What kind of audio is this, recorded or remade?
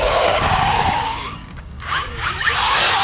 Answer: remade